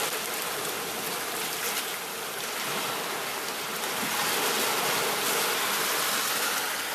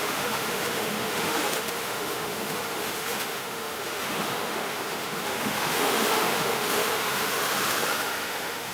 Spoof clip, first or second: second